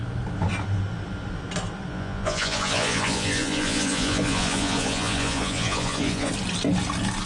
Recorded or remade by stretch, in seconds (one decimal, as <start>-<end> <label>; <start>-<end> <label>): 0.0-1.9 recorded; 1.9-6.3 remade; 6.3-7.3 recorded